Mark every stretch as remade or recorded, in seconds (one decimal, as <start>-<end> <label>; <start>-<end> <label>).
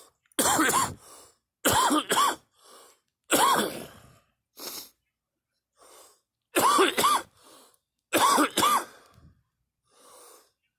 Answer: 0.0-10.8 recorded